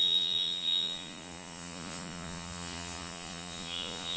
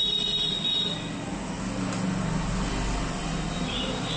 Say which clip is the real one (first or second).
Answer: second